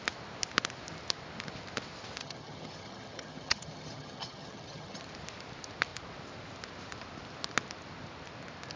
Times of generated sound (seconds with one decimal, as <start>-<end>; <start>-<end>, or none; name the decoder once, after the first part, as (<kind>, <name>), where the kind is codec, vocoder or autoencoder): 2.2-5.0 (vocoder, HiFi-GAN)